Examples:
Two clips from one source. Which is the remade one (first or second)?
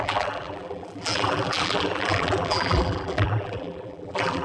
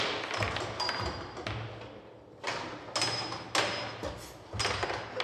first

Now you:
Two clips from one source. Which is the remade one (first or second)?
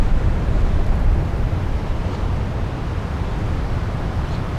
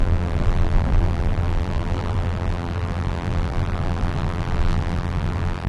second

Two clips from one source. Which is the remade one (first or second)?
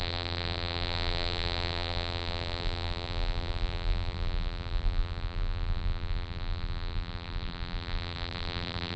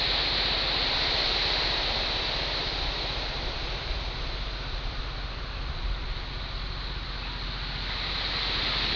first